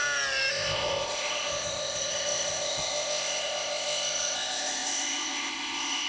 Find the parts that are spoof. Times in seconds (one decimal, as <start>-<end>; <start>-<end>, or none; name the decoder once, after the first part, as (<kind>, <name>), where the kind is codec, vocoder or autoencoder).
0.5-6.1 (codec, ZipCodec)